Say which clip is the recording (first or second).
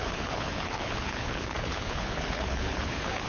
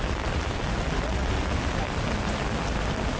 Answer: second